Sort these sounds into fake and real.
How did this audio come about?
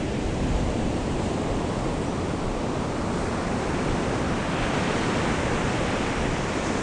real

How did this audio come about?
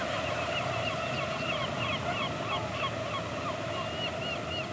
real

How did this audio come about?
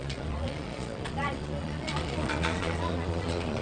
fake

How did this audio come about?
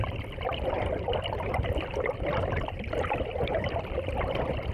fake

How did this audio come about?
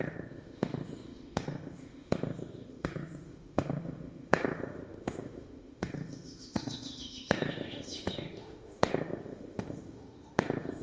fake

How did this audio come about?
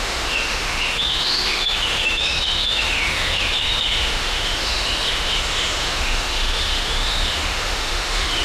fake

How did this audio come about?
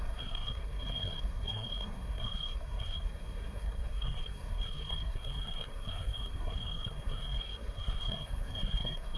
fake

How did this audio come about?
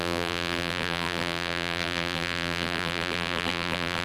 fake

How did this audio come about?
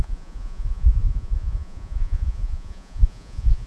fake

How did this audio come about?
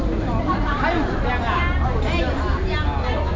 real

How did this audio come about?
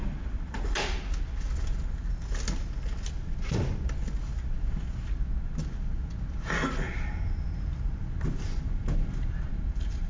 real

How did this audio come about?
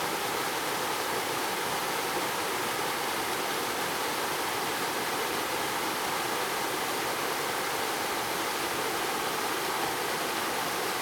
real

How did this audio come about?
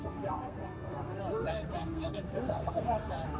fake